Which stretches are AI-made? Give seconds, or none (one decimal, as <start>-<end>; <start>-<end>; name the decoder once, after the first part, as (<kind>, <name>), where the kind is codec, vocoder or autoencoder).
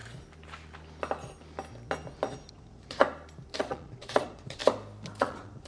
2.5-3.0 (vocoder, Vocos); 3.6-4.6; 5.2-5.7